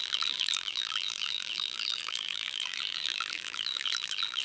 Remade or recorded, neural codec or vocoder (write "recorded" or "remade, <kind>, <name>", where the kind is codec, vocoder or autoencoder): remade, vocoder, BigVGAN v2